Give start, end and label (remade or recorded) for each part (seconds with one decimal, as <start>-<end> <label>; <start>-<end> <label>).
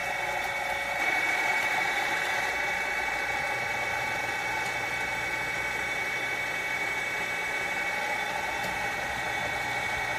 0.0-10.2 recorded